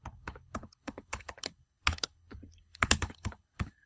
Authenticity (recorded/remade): remade